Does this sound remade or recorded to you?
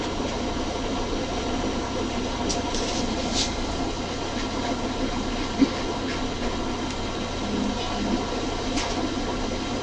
recorded